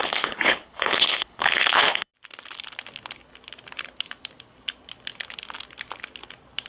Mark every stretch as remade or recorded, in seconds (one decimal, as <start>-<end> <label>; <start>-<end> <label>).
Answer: 0.0-2.1 remade; 2.1-6.7 recorded